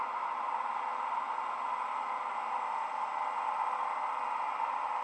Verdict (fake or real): real